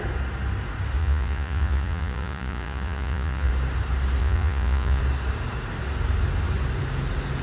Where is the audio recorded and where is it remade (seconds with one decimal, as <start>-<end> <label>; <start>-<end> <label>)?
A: 0.0-1.0 recorded; 1.0-3.5 remade; 3.5-4.2 recorded; 4.2-5.0 remade; 5.0-7.4 recorded